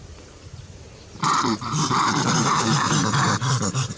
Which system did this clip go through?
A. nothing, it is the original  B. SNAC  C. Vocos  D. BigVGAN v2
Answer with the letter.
D